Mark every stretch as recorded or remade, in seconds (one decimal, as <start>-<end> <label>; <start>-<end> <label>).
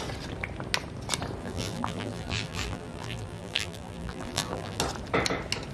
0.0-1.4 recorded; 1.4-4.8 remade; 4.8-5.7 recorded